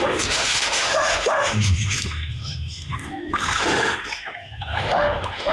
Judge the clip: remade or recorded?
remade